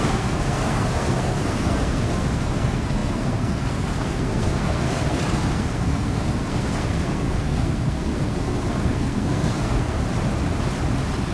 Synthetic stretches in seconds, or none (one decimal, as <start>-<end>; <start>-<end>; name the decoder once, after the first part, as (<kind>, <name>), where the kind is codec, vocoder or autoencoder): 0.0-10.0 (codec, SNAC)